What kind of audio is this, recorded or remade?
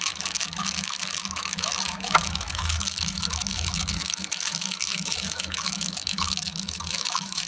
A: remade